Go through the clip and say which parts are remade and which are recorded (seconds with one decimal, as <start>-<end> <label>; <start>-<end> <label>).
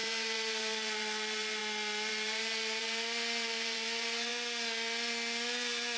0.0-1.6 remade; 1.6-2.1 recorded; 2.1-4.3 remade; 4.3-6.0 recorded